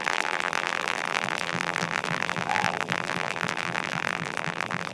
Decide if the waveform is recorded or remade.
remade